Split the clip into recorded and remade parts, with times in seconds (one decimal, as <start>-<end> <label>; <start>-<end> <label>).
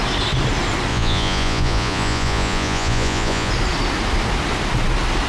0.0-0.9 recorded; 0.9-3.5 remade; 3.5-5.3 recorded